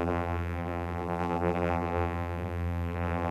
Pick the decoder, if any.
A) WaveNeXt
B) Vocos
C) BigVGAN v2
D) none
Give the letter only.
C